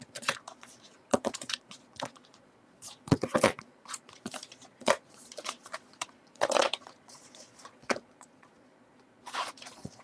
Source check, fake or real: fake